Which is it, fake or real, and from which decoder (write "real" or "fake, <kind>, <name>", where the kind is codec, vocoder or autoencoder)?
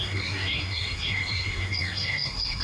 fake, codec, SNAC